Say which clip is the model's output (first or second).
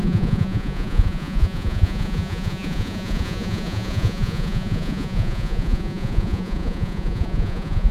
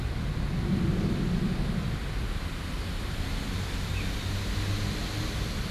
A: first